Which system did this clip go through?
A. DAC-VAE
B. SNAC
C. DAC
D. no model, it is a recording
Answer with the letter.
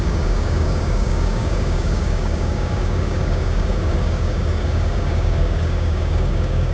C